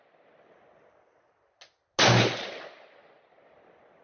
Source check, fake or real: real